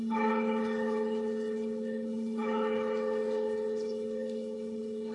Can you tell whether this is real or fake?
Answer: fake